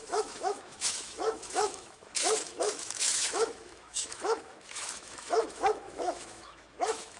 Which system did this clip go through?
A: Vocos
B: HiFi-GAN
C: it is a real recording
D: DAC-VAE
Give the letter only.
D